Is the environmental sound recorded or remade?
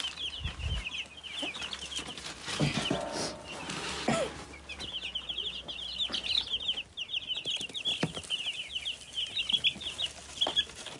recorded